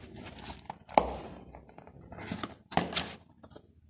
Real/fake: real